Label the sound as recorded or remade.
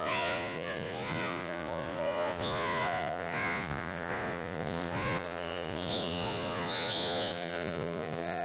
remade